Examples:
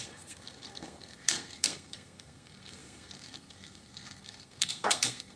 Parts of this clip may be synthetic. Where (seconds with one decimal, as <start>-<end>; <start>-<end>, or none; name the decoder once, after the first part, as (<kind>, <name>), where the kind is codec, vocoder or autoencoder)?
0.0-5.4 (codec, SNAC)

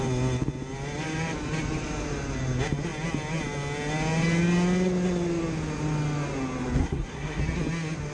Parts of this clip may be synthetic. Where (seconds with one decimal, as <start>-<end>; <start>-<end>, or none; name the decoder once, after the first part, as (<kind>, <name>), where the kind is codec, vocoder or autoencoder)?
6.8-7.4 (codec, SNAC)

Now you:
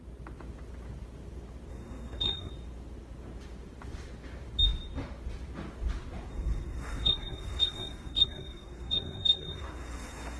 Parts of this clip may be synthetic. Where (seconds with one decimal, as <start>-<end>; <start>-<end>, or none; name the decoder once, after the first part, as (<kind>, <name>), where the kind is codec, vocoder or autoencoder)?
1.7-2.5 (codec, SNAC); 6.3-10.4

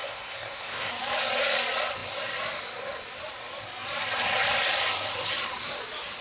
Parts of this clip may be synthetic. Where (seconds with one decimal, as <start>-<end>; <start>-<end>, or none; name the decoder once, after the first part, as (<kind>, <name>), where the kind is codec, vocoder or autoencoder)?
0.0-0.9 (codec, SNAC)

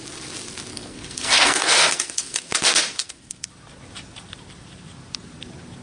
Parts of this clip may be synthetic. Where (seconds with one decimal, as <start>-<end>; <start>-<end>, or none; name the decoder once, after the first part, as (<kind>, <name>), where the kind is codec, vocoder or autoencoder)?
0.7-3.5 (codec, SNAC)